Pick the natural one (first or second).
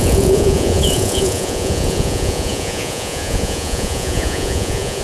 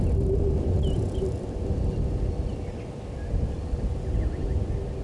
second